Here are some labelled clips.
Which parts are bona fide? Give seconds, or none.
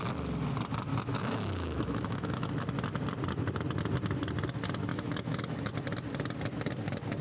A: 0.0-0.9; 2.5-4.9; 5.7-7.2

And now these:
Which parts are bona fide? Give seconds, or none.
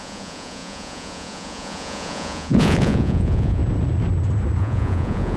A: 3.6-4.6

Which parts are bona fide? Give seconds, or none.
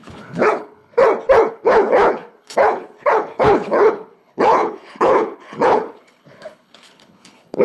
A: 1.0-1.5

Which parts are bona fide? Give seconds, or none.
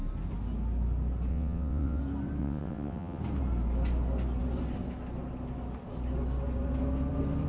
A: 0.0-1.3; 2.0-2.4; 3.2-7.5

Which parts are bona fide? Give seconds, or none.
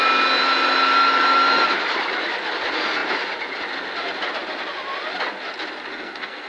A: 0.0-5.9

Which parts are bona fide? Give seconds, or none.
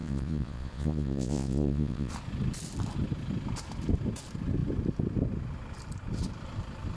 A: 2.1-7.0